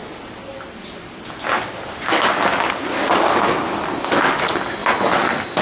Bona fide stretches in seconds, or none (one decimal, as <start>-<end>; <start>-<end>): 0.0-5.6